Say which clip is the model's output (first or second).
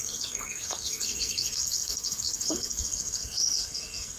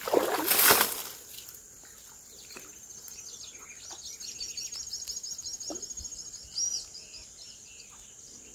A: first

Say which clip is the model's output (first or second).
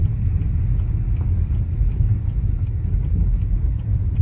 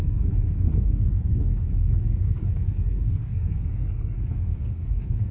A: second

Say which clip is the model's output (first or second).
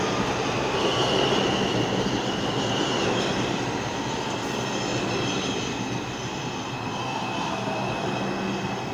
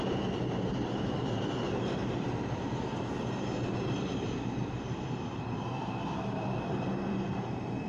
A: second